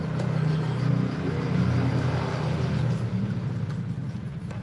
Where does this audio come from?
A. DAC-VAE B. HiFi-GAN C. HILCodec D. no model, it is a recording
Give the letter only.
D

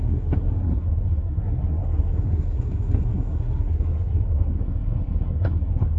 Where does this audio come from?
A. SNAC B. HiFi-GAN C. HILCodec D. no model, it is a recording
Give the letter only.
A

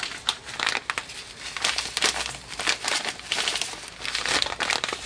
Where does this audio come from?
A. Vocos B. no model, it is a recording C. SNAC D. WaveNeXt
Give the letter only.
B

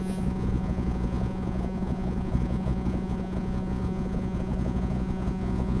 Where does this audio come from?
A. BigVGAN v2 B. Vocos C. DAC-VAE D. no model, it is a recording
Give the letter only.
B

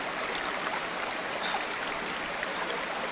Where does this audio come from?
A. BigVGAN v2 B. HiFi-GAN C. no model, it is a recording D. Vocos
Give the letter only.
C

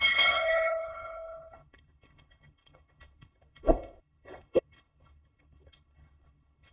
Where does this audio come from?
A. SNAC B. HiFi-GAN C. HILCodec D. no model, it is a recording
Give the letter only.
C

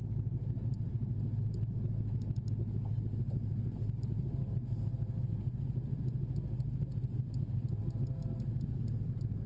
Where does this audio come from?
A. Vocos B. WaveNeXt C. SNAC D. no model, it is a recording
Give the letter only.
D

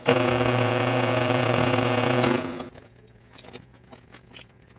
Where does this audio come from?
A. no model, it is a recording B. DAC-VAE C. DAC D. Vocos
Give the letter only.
D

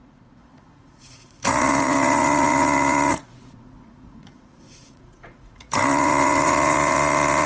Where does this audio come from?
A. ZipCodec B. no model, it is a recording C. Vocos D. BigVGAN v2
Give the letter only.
C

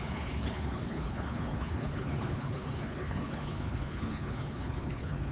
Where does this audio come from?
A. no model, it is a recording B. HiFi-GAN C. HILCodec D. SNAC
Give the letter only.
C